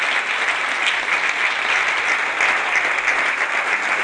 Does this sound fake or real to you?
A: real